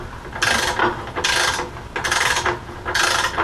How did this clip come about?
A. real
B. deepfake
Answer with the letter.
A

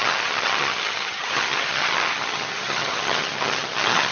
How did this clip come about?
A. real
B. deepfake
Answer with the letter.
B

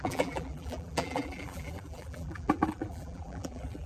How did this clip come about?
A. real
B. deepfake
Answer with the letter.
B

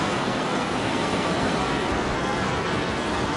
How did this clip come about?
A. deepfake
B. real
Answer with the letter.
A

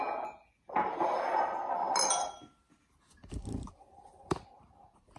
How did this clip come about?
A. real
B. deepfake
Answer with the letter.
A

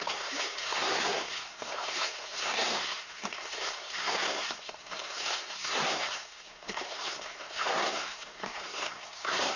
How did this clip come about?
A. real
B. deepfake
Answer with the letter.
B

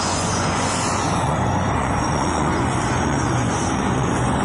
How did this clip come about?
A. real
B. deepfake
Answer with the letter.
B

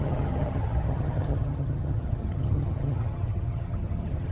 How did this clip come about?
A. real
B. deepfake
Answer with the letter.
B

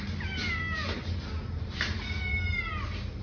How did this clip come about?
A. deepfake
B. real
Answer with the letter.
B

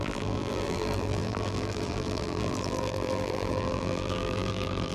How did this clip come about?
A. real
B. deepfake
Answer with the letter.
B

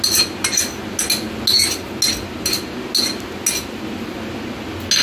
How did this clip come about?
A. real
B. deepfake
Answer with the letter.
A